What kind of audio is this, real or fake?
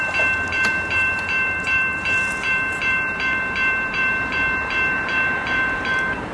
fake